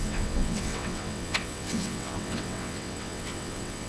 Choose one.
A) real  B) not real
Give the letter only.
B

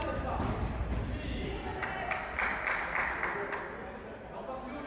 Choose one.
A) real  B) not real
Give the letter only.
A